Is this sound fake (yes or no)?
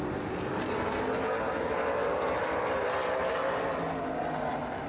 no